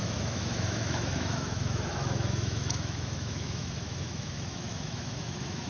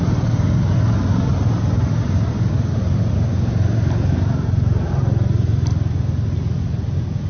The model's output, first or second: first